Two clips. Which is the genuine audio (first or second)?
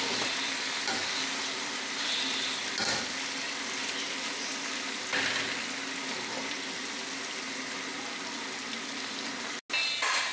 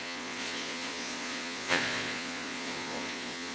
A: first